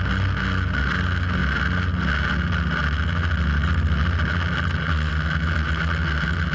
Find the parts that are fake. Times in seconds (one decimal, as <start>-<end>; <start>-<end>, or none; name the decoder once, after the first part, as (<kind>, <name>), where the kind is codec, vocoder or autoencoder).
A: none